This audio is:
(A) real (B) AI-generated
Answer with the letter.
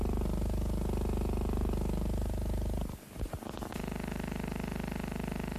A